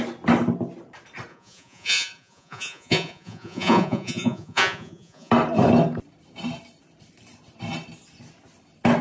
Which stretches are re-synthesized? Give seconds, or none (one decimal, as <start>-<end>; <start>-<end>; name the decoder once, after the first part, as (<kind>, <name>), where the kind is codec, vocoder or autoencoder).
1.3-5.3 (vocoder, Vocos)